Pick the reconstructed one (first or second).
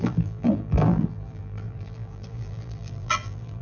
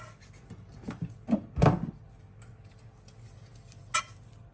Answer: first